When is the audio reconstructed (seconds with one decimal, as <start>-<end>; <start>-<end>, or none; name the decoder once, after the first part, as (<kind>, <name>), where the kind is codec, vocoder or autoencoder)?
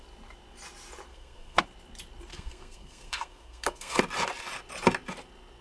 1.1-1.6 (codec, SNAC); 2.3-4.0